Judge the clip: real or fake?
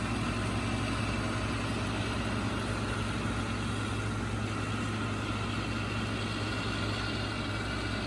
real